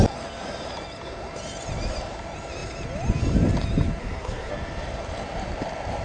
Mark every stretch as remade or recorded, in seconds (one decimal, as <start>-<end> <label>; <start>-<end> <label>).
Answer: 0.0-4.0 recorded; 4.0-4.5 remade; 4.5-6.0 recorded

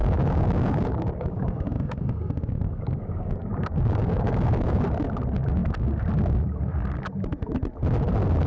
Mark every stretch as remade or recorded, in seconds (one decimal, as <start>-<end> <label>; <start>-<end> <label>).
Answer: 0.0-4.8 remade; 4.8-8.5 recorded

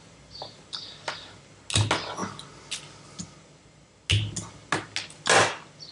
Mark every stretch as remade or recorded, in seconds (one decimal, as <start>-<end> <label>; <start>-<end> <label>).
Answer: 0.0-5.9 recorded

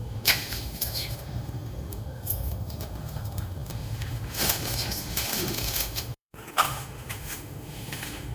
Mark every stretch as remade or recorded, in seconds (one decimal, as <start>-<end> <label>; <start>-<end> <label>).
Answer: 0.0-8.3 remade

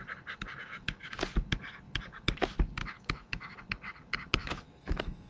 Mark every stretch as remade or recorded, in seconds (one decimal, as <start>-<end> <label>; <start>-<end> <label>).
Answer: 0.0-0.6 recorded; 0.6-1.2 remade; 1.2-2.8 recorded; 2.8-3.6 remade; 3.6-4.4 recorded; 4.4-5.3 remade